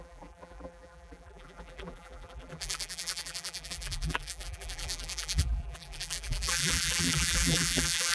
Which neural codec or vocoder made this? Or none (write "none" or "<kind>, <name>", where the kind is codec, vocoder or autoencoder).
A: vocoder, BigVGAN v2